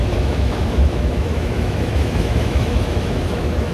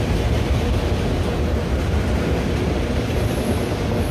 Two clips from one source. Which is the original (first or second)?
second